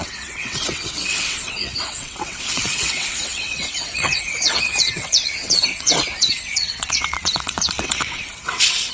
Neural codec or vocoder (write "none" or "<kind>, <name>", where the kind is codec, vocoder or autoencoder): vocoder, WaveNeXt